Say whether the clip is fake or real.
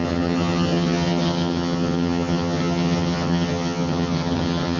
fake